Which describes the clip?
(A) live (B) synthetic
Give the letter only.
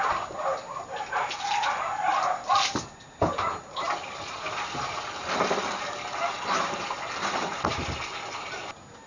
A